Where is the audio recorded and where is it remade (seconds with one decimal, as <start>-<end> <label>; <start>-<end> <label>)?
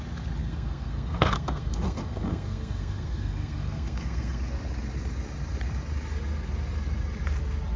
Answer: 0.0-0.4 recorded; 0.4-4.4 remade; 4.4-7.8 recorded